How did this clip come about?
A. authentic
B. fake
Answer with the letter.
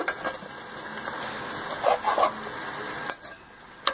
A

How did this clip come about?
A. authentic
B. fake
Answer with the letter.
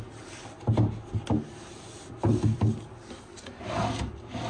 A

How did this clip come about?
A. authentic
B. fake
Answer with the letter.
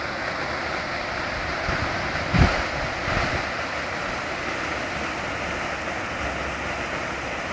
A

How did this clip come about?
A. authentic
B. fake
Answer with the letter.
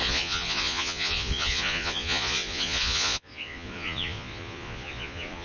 B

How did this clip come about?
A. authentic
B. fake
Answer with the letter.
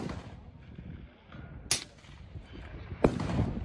A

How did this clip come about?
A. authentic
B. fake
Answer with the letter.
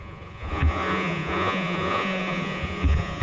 B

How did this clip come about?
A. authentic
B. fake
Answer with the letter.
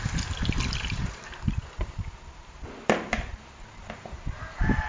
A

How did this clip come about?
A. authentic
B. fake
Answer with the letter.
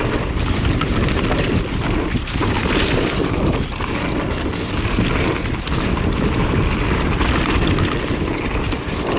A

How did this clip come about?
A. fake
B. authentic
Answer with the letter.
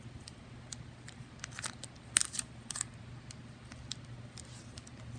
B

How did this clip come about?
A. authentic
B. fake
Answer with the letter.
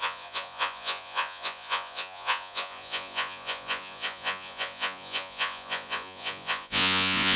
B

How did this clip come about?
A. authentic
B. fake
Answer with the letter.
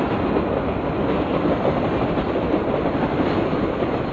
A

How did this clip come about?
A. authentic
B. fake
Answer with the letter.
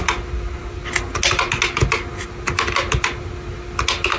A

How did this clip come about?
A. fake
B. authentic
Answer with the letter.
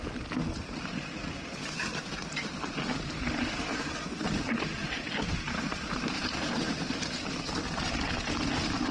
B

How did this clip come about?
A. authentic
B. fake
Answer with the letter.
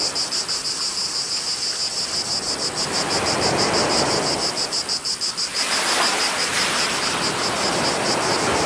A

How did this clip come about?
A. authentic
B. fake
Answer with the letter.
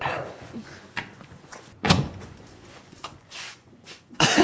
B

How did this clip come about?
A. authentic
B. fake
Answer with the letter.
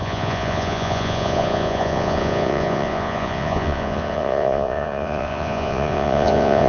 B